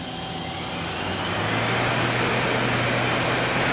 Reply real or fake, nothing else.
real